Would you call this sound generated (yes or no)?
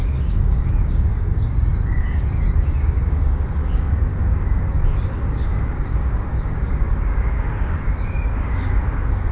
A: yes